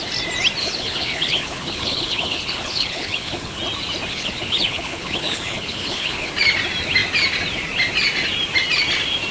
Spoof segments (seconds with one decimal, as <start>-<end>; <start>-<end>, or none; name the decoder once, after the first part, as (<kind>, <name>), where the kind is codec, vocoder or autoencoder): 0.6-3.6 (codec, HILCodec); 4.1-6.3